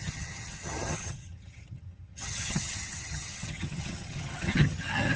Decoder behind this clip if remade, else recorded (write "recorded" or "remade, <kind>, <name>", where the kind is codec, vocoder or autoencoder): remade, vocoder, HiFi-GAN